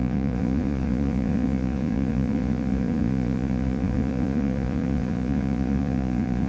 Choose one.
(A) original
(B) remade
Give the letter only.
B